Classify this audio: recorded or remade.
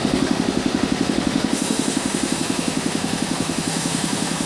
remade